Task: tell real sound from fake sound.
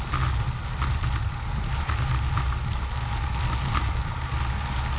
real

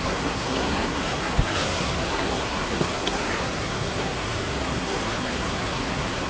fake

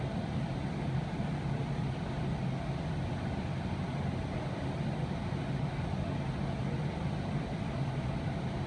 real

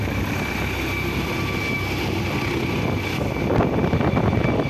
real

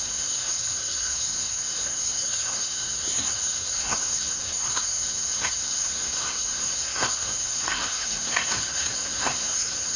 fake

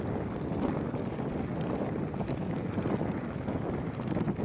real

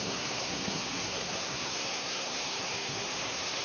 fake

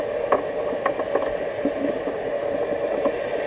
real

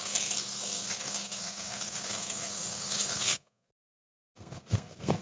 fake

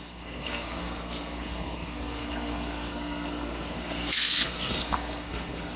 fake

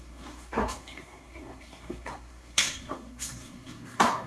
fake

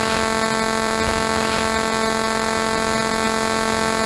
real